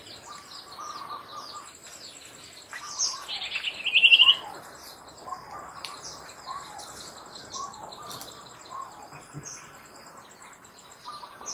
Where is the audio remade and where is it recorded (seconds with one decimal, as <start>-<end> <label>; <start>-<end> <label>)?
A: 0.0-11.5 recorded